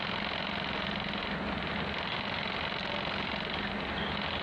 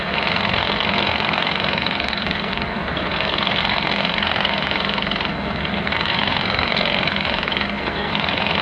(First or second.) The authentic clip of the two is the first